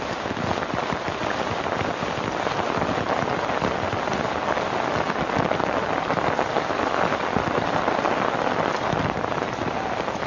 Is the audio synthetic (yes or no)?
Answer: no